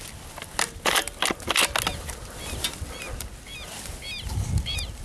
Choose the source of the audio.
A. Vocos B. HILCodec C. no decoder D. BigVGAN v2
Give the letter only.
C